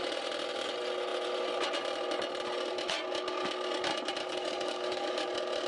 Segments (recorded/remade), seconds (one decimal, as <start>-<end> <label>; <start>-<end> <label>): 0.0-4.2 recorded; 4.2-5.3 remade; 5.3-5.7 recorded